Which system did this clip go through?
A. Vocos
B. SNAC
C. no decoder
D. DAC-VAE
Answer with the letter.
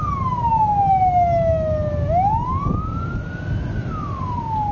C